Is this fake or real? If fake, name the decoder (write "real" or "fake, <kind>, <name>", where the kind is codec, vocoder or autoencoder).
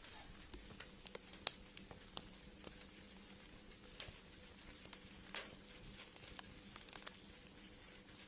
real